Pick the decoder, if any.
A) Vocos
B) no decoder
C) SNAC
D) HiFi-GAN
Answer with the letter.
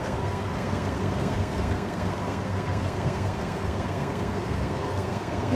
C